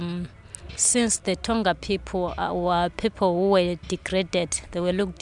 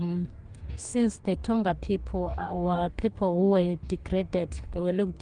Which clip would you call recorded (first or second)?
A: first